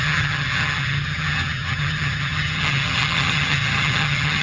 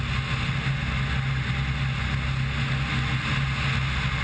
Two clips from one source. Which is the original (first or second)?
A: second